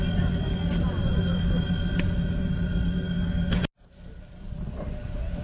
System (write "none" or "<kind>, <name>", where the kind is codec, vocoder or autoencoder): none